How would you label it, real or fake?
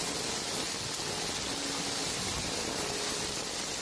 real